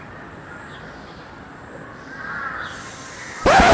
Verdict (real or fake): real